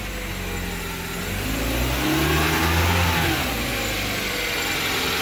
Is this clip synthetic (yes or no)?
no